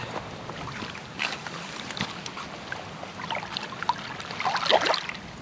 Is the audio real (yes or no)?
yes